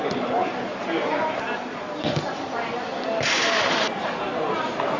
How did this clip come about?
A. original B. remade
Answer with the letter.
A